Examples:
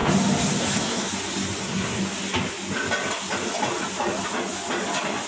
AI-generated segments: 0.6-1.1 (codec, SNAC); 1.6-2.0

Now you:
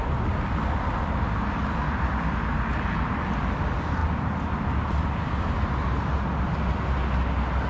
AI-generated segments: none